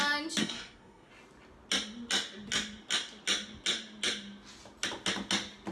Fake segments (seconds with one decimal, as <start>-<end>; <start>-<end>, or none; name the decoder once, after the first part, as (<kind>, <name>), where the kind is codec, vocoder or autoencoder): 0.4-1.1 (codec, SNAC)